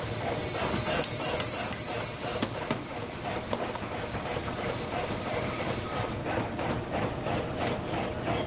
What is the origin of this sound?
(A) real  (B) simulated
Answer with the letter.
B